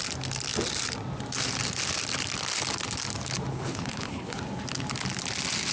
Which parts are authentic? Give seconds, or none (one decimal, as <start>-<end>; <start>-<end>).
0.0-3.5; 4.4-5.7